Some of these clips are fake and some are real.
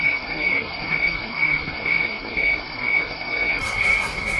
fake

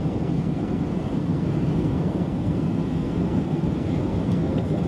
fake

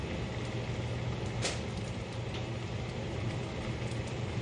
real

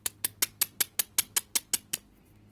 real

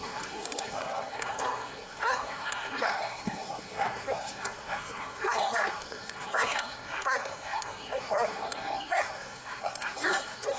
fake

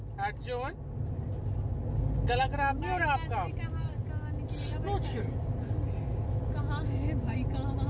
real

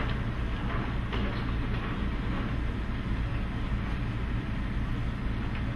real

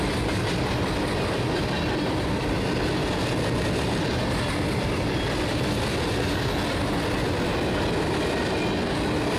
real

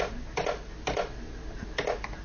real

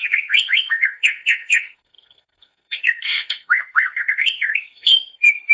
fake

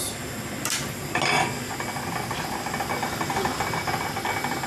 real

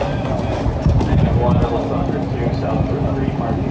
real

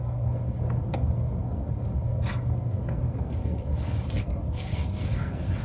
fake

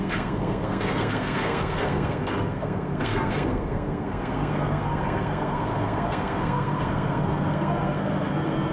fake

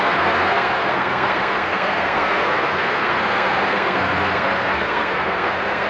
fake